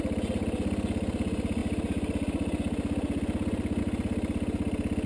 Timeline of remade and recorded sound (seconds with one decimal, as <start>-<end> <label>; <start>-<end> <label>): 0.0-5.1 recorded